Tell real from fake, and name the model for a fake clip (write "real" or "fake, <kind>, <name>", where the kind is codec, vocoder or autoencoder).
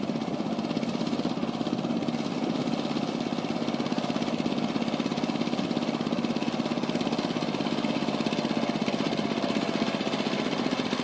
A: real